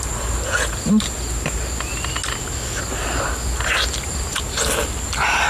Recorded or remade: recorded